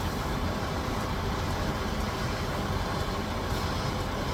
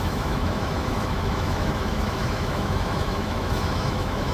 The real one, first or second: first